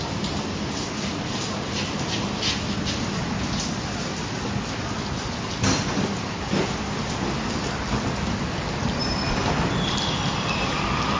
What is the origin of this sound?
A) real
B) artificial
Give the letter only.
A